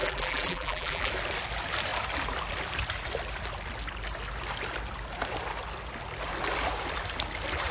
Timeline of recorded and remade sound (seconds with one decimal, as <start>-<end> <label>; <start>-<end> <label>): 0.0-1.1 remade; 1.1-7.7 recorded